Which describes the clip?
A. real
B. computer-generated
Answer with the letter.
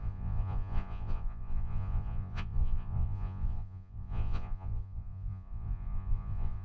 B